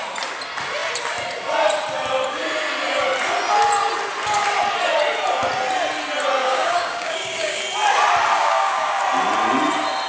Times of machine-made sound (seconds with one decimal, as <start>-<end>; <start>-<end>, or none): 6.4-7.6; 8.4-9.0